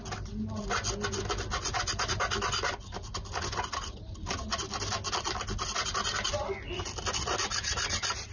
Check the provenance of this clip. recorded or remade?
recorded